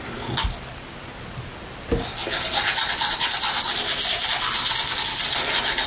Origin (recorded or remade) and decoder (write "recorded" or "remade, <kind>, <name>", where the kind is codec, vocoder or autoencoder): recorded